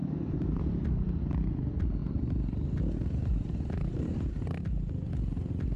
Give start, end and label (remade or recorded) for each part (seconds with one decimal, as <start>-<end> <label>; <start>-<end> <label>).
0.0-0.6 remade; 0.6-2.0 recorded; 2.0-4.3 remade; 4.3-5.8 recorded